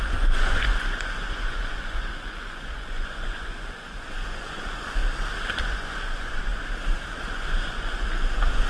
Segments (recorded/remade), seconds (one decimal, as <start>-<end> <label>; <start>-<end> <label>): 0.0-5.0 remade; 5.0-5.6 recorded; 5.6-6.5 remade; 6.5-7.2 recorded; 7.2-8.7 remade